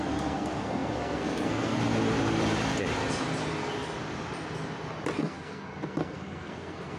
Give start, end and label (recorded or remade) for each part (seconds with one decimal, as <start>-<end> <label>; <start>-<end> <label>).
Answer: 0.0-1.8 remade; 1.8-5.2 recorded; 5.2-7.0 remade